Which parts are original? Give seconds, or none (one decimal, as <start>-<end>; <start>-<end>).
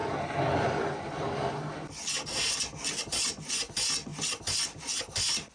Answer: 0.0-5.5